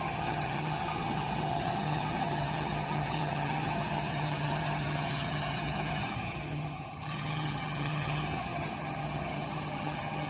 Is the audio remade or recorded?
remade